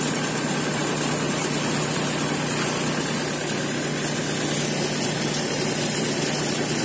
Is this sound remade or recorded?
recorded